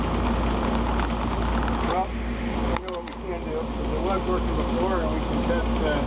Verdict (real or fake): real